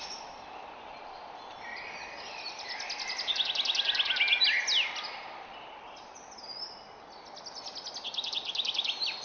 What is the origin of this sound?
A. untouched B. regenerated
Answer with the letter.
A